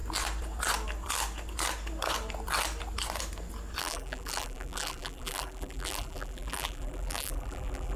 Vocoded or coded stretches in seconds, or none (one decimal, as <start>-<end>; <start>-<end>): 3.8-8.0